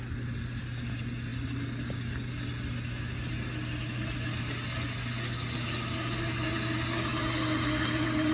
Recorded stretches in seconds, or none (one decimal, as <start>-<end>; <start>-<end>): 0.0-8.3